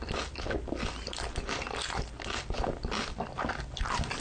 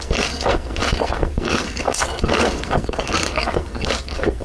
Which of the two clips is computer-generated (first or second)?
second